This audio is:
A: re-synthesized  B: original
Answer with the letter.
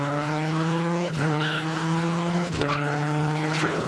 A